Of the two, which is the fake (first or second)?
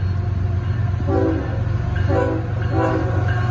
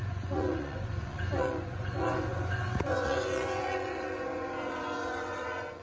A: second